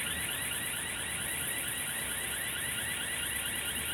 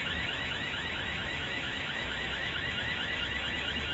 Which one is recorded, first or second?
first